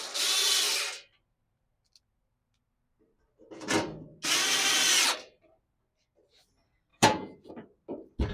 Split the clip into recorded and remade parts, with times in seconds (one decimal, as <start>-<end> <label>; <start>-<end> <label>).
0.0-6.9 recorded; 6.9-7.5 remade; 7.5-8.3 recorded